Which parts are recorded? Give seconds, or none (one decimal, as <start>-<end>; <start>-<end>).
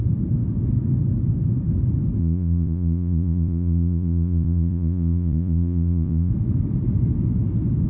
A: 0.0-2.2; 6.3-7.9